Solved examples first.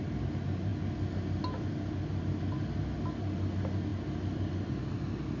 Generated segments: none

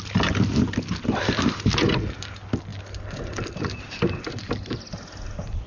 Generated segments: none

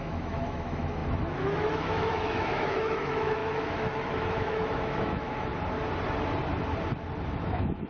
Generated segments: 0.0-5.5 (autoencoder, DAC-VAE); 7.2-7.9

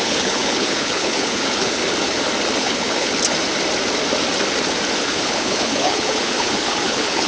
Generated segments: 0.0-1.8 (codec, HILCodec); 2.6-3.1; 5.0-7.3

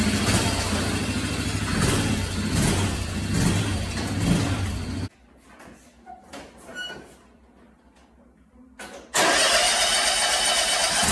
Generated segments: none

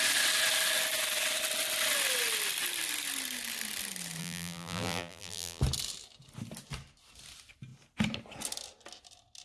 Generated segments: 4.2-5.6 (vocoder, BigVGAN v2)

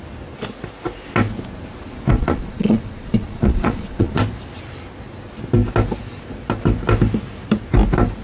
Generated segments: 2.2-4.2 (vocoder, Vocos)